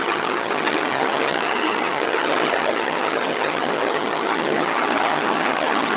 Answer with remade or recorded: remade